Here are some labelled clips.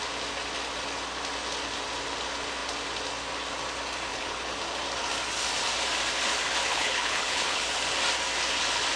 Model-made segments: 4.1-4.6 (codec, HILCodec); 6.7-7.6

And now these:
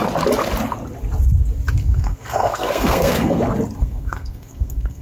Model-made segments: 1.8-3.4 (codec, SNAC); 3.8-5.0

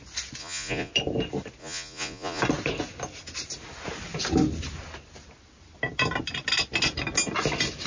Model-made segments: 0.4-0.9 (vocoder, Vocos); 1.6-2.4